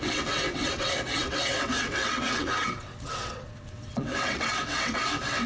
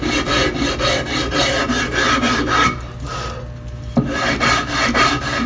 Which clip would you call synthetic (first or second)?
first